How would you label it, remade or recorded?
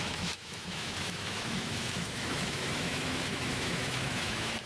remade